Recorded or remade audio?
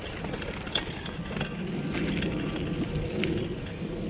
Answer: recorded